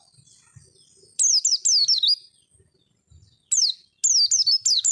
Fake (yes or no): no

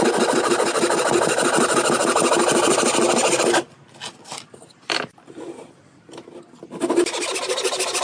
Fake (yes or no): no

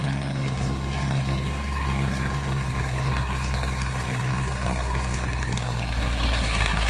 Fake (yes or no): yes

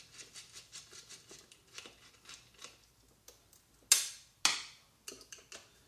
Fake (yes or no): no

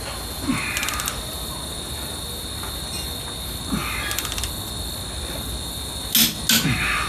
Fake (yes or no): no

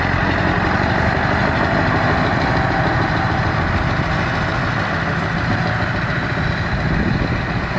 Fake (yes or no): no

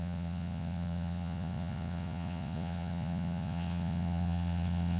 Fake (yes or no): yes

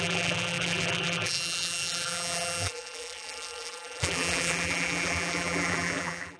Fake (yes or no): yes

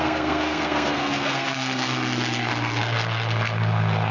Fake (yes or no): yes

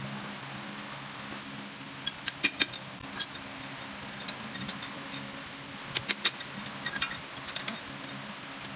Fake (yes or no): no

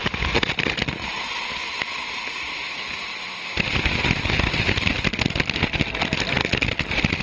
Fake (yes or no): no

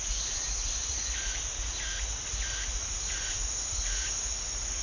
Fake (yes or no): yes